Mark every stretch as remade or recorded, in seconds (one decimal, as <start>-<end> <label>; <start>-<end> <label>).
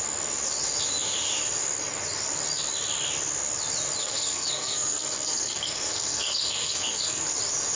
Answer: 0.0-4.0 recorded; 4.0-7.2 remade; 7.2-7.8 recorded